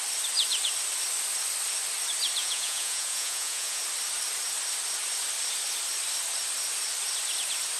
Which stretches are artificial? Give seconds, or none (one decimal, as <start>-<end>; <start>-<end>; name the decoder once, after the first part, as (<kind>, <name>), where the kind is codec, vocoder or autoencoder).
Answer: 2.4-3.8 (vocoder, Vocos)